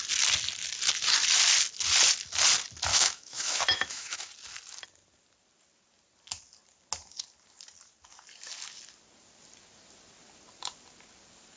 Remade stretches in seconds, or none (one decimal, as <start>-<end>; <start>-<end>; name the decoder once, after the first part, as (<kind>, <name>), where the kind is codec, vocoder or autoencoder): 2.9-4.3 (autoencoder, DAC-VAE)